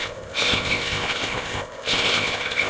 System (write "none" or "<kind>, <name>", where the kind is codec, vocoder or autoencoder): codec, ZipCodec